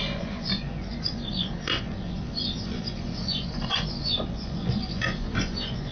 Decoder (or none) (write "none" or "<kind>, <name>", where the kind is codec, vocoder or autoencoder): vocoder, Vocos